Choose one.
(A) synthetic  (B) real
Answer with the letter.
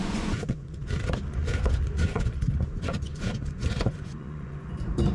A